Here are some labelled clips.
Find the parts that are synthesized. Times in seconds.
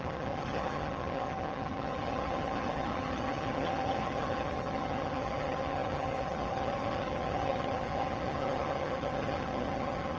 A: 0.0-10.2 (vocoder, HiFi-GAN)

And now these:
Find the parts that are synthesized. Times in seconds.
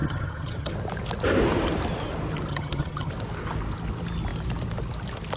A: 0.0-0.7 (vocoder, HiFi-GAN); 2.5-3.1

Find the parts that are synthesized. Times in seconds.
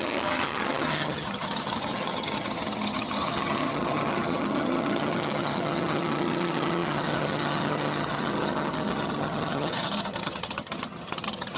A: 0.0-11.6 (vocoder, HiFi-GAN)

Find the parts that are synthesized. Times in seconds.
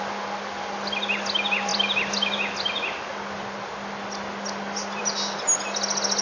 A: none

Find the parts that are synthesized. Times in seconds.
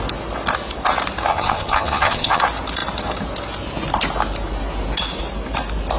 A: 1.3-2.4 (vocoder, HiFi-GAN)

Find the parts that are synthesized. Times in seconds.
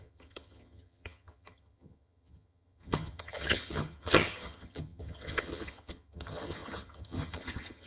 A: 0.0-7.9 (vocoder, HiFi-GAN)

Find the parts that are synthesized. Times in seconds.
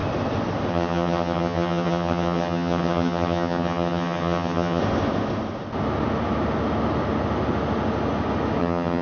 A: 0.7-4.8 (vocoder, HiFi-GAN); 8.6-9.0